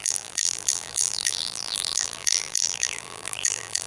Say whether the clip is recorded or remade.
remade